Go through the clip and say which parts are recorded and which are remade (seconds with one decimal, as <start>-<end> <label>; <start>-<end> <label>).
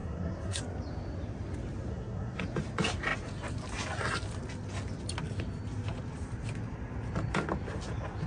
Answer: 0.0-0.6 remade; 0.6-1.9 recorded; 1.9-2.4 remade; 2.4-8.3 recorded